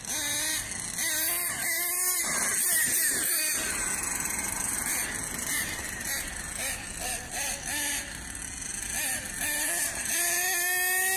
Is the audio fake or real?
real